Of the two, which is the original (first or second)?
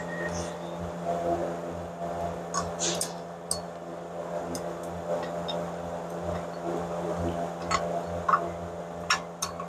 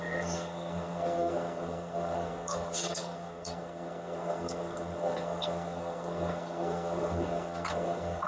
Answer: first